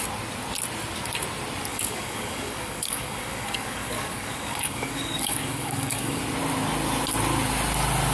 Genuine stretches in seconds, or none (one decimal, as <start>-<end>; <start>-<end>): 0.0-1.7; 6.2-8.1